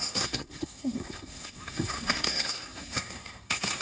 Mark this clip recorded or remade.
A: remade